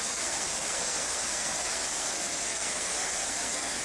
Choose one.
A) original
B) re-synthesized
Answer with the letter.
B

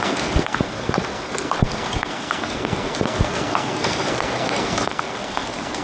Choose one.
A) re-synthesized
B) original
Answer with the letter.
A